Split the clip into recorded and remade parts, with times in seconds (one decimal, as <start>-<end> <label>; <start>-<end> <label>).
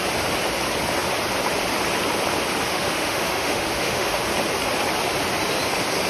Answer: 0.0-2.7 recorded; 2.7-4.2 remade; 4.2-6.1 recorded